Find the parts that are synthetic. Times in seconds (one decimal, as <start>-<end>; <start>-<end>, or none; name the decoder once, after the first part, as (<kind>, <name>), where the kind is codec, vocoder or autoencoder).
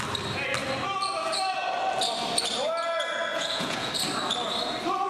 3.3-3.9 (vocoder, Vocos)